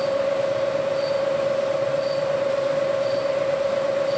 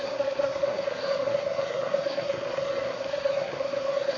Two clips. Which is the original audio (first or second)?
first